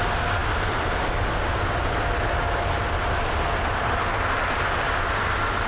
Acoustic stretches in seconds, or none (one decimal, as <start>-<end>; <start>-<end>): 0.0-5.7